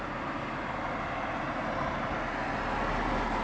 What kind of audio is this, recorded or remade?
recorded